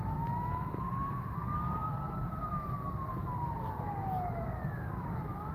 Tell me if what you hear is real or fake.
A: fake